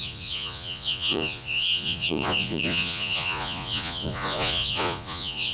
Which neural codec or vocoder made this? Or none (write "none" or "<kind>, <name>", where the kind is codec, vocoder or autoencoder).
vocoder, Vocos